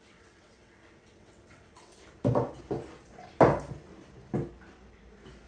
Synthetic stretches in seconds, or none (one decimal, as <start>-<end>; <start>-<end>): 0.0-1.9

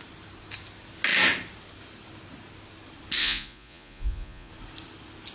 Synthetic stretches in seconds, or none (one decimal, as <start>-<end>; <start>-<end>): 3.2-4.5

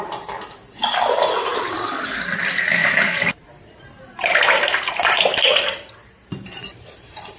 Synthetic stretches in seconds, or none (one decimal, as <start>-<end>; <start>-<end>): 2.8-5.2; 6.3-7.4

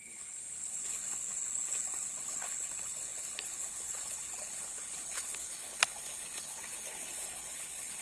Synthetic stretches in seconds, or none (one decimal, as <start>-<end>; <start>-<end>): 0.0-8.0

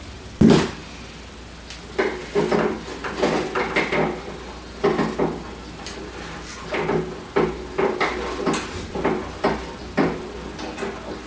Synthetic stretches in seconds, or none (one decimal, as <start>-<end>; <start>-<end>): none